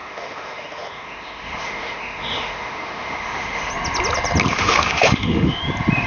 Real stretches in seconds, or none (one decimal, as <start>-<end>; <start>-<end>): 3.7-4.5; 5.6-6.1